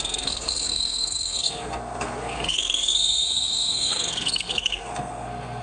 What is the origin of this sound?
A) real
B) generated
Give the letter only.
B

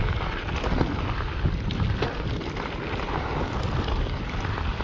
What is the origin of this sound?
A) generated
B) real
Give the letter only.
B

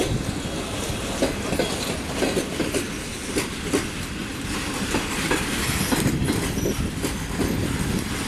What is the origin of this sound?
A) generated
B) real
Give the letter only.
B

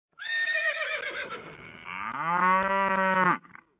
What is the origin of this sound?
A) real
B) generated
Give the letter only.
B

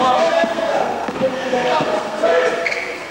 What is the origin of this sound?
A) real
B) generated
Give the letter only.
B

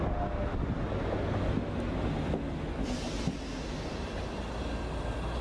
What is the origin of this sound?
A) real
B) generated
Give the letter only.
A